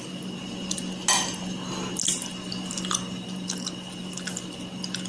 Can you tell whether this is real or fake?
real